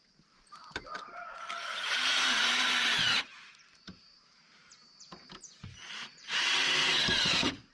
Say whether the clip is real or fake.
fake